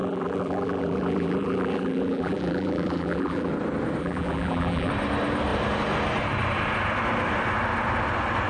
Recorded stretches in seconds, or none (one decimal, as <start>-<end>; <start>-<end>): 3.5-4.0; 4.9-8.5